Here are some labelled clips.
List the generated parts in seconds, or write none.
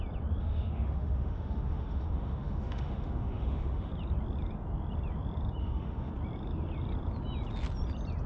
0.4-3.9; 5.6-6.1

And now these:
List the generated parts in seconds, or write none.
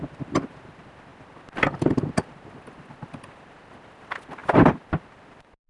none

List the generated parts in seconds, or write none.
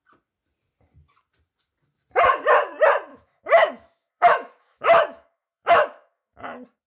3.1-6.4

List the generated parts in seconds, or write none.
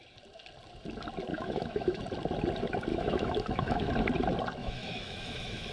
1.3-2.0; 2.9-3.9; 4.6-5.7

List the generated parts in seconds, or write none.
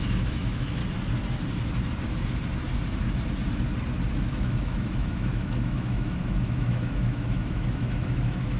0.0-0.8; 4.1-8.6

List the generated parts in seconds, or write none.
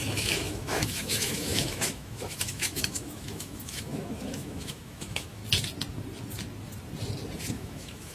0.0-5.4; 7.5-8.1